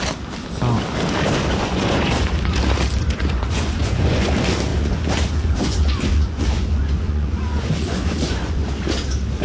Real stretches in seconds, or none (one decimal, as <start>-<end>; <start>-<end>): 0.0-1.6; 2.6-3.0; 4.3-4.7; 8.7-9.4